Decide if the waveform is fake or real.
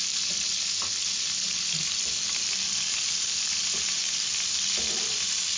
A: real